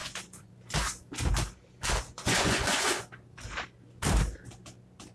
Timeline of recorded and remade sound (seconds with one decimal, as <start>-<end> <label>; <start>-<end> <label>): 0.0-0.5 remade; 0.5-2.1 recorded; 2.1-3.1 remade; 3.1-5.1 recorded